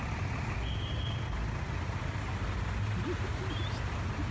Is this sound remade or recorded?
recorded